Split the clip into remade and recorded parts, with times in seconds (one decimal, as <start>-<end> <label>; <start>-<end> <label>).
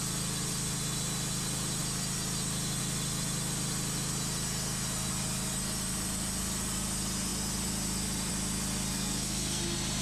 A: 0.0-8.9 recorded; 8.9-9.6 remade; 9.6-10.0 recorded